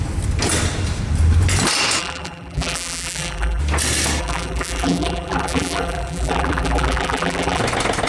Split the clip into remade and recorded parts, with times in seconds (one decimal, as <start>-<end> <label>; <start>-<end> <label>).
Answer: 0.0-2.0 recorded; 2.0-3.6 remade; 3.6-4.2 recorded; 4.2-7.6 remade; 7.6-8.1 recorded